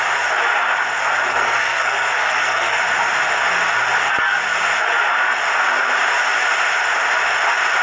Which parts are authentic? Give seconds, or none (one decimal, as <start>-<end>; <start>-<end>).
0.0-1.3; 2.8-7.8